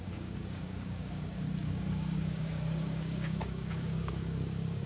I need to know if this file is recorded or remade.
remade